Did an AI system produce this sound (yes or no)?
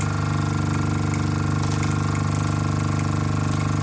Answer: no